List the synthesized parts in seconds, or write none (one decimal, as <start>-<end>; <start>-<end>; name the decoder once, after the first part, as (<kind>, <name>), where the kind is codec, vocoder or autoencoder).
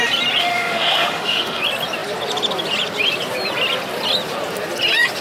0.4-1.6 (autoencoder, DAC-VAE)